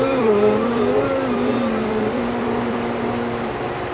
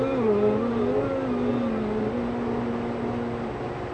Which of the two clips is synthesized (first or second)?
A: first